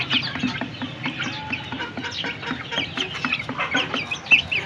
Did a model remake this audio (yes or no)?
no